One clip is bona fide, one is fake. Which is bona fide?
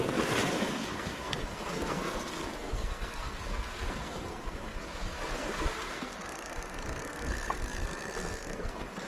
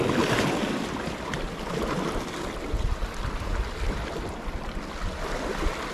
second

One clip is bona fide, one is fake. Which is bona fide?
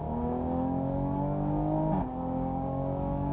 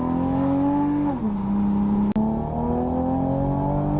second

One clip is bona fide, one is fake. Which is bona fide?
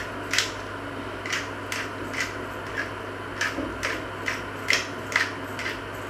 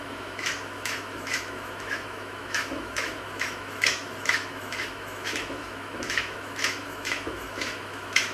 first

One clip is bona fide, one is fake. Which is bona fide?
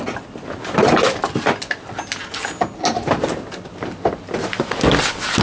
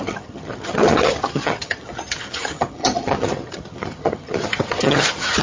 first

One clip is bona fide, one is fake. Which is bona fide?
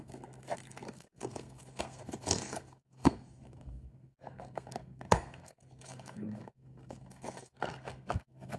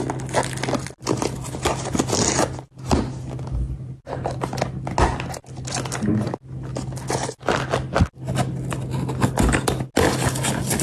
second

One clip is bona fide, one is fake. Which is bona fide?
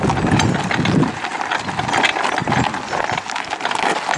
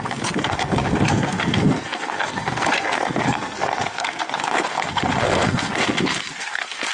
first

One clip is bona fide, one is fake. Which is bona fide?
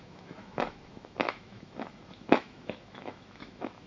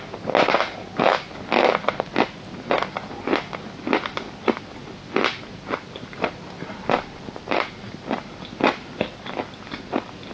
second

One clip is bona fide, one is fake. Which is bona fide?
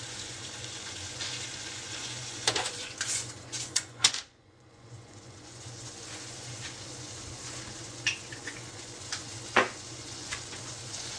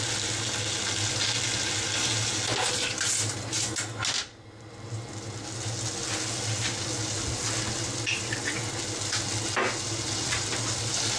second